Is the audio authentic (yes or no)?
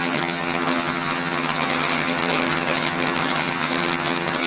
no